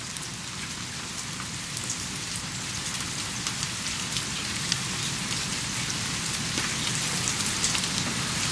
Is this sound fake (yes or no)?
no